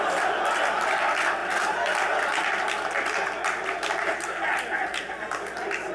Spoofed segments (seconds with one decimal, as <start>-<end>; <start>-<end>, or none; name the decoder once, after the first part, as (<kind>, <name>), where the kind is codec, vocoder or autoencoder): none